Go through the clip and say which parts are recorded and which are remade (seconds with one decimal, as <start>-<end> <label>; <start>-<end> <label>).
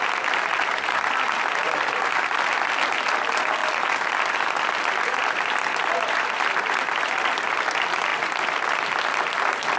0.0-9.8 recorded